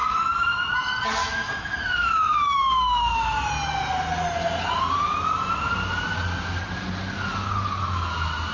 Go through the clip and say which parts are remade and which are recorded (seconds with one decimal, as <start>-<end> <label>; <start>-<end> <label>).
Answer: 0.0-0.7 remade; 0.7-1.2 recorded; 1.2-3.5 remade; 3.5-8.5 recorded